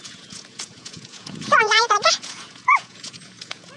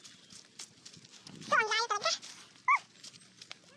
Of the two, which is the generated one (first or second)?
first